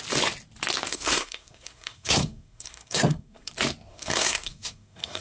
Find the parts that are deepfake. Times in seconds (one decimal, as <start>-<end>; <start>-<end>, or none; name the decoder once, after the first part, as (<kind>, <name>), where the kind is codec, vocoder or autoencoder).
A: 0.9-3.5 (codec, SNAC); 3.9-5.2